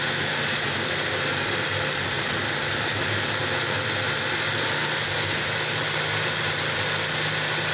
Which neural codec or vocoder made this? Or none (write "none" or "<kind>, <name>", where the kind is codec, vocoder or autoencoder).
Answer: none